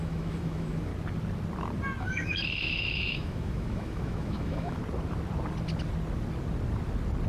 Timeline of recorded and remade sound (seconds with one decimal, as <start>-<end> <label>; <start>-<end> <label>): 0.0-0.9 remade; 0.9-2.0 recorded; 2.0-4.8 remade; 4.8-7.3 recorded